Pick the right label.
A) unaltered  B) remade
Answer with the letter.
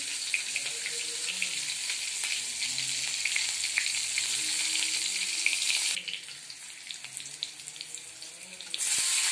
A